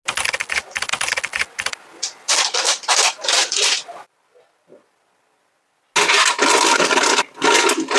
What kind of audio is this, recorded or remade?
recorded